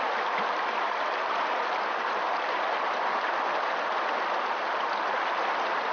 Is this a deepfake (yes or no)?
no